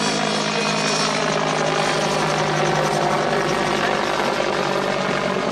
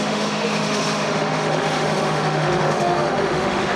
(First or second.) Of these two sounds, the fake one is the second